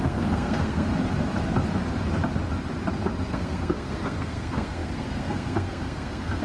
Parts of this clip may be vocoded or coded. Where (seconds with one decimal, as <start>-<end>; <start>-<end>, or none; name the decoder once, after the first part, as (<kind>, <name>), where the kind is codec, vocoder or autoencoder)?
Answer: 0.0-0.9 (codec, SNAC); 3.3-6.4